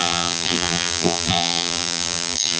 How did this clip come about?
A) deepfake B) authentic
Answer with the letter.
A